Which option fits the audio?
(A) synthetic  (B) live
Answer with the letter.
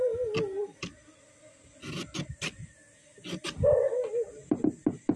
B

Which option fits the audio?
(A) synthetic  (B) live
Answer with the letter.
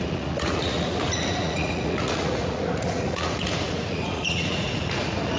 A